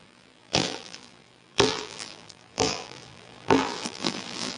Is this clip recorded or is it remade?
remade